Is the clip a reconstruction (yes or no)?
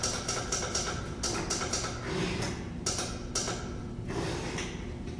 no